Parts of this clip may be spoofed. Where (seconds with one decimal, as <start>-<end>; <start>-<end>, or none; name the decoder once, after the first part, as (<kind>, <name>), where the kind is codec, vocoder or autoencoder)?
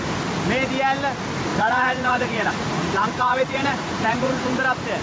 1.5-4.5 (vocoder, Vocos)